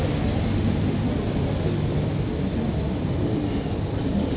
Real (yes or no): yes